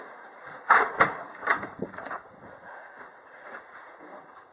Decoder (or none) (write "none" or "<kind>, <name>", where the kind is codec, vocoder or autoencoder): vocoder, Vocos